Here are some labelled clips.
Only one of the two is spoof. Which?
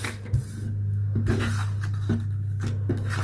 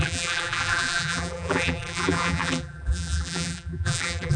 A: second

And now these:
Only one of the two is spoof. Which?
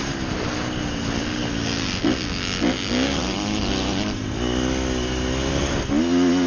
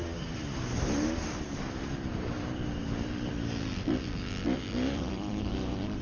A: second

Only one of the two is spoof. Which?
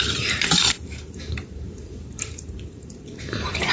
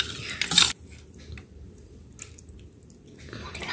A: first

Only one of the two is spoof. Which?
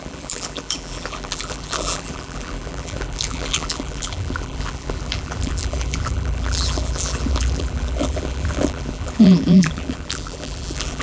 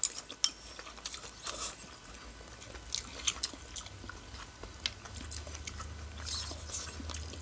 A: first